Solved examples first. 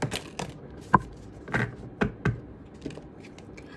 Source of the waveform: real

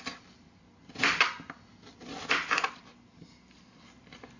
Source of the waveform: real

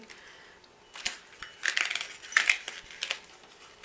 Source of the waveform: real